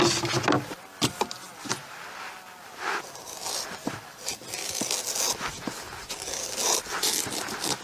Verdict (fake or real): real